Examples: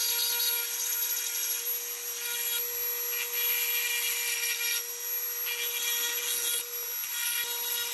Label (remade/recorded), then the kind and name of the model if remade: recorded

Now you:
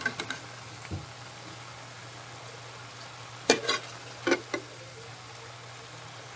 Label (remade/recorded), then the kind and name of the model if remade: recorded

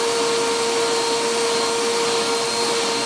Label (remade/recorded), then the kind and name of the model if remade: recorded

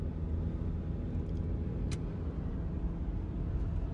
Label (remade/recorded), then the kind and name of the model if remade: recorded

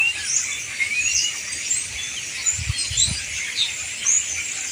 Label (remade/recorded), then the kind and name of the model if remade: recorded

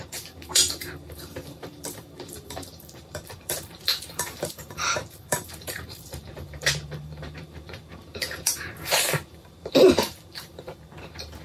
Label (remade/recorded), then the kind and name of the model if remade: remade, vocoder, BigVGAN v2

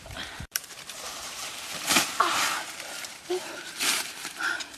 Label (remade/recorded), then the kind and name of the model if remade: remade, vocoder, BigVGAN v2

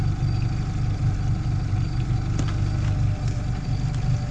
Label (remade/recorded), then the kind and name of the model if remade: recorded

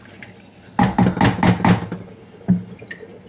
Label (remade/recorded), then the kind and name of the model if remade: recorded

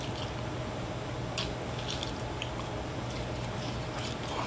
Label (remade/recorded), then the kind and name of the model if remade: recorded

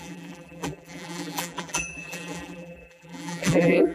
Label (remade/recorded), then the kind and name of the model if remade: remade, vocoder, BigVGAN v2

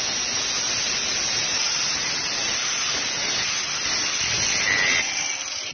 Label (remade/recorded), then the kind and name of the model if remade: recorded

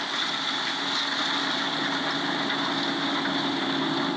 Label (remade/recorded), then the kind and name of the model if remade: recorded